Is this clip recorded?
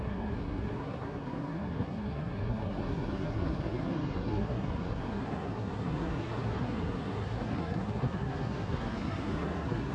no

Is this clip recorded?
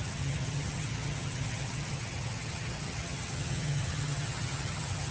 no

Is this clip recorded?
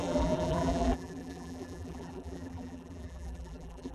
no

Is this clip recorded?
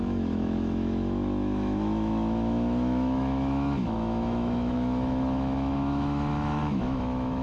no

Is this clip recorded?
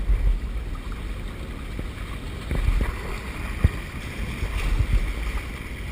yes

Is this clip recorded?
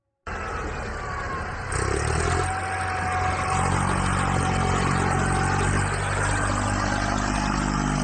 yes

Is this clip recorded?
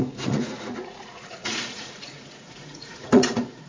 no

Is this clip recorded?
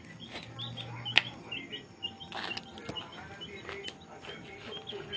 yes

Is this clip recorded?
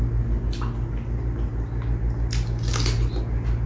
yes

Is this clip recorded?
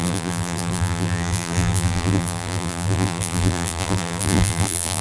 no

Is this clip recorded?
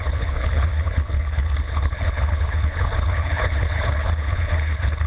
no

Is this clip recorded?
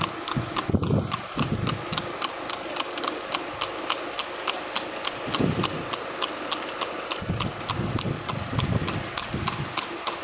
yes